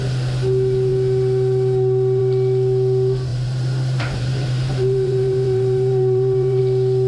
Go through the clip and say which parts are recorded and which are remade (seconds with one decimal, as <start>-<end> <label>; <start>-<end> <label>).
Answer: 0.0-3.3 recorded; 3.3-6.6 remade; 6.6-7.1 recorded